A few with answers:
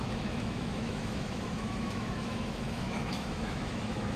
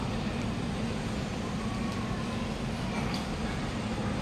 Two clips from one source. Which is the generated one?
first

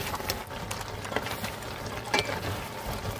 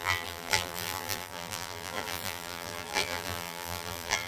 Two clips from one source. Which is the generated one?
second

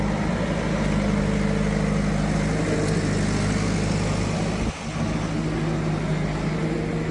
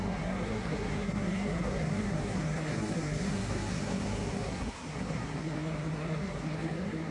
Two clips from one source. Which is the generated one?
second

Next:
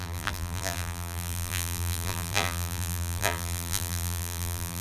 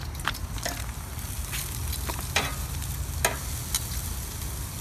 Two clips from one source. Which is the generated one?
first